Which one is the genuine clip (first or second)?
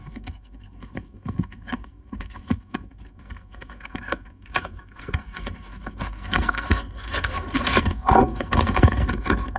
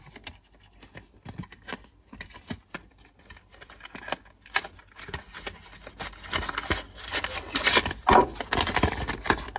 second